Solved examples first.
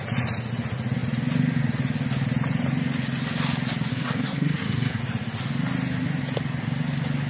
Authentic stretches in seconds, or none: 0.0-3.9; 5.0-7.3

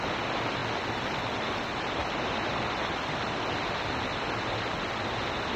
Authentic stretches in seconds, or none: 0.0-5.6

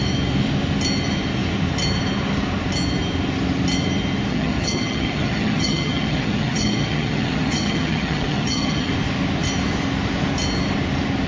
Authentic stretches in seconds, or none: 0.0-4.3; 8.9-11.3